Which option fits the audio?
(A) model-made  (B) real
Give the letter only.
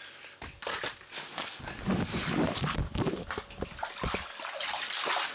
B